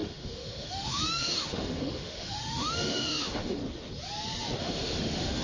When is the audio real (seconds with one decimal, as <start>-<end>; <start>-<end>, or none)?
3.6-4.6